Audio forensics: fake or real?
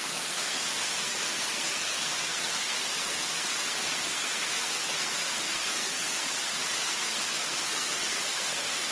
fake